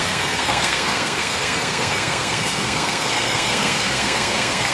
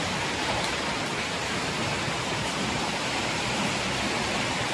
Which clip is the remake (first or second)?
first